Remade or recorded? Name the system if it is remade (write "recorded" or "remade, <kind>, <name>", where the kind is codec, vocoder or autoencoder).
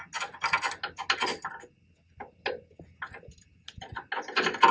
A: recorded